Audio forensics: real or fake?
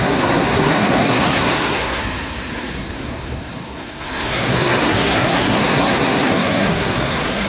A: fake